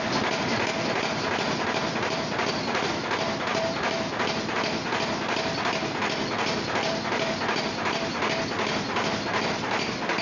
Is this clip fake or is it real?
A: fake